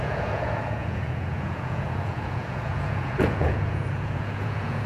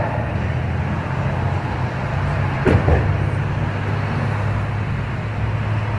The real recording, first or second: second